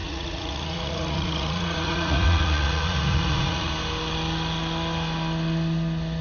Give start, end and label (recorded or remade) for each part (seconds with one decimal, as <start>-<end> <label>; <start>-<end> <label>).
0.0-3.7 remade; 3.7-6.2 recorded